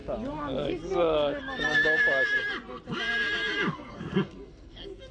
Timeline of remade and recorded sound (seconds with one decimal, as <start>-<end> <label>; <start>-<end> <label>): 0.0-3.7 recorded; 3.7-5.1 remade